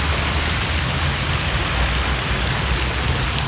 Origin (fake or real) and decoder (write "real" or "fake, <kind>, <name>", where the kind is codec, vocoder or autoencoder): real